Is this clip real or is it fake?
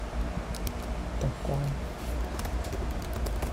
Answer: real